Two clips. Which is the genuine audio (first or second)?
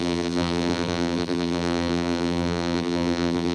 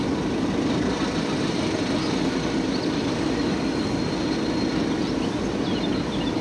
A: second